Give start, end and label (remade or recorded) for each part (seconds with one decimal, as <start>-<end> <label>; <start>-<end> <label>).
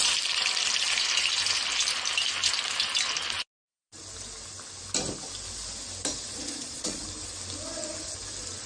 0.0-6.3 recorded; 6.3-7.0 remade; 7.0-8.7 recorded